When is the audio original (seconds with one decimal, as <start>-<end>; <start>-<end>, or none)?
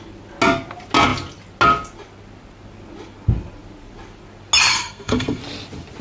0.0-4.7; 5.4-6.0